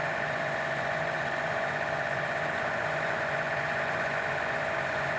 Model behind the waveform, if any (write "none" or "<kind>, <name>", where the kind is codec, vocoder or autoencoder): vocoder, Vocos